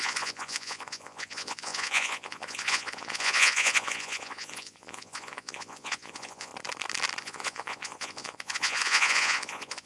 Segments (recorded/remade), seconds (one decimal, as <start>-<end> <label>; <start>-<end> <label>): 0.0-6.5 remade; 6.5-7.2 recorded; 7.2-9.9 remade